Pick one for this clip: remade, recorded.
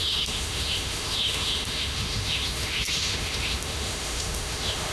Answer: remade